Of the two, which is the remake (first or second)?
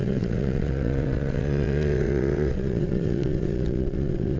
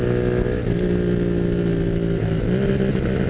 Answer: first